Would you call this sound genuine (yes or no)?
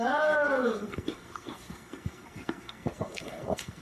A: no